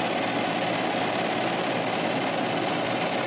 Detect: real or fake fake